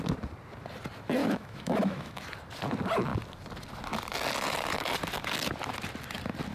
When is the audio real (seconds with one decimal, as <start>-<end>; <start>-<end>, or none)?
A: 0.0-1.2; 2.2-6.5